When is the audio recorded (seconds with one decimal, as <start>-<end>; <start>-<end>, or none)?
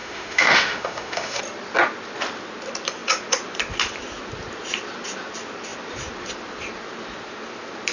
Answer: 1.4-7.9